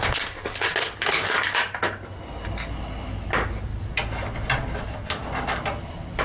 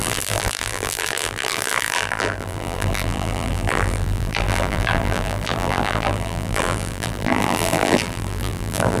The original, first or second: first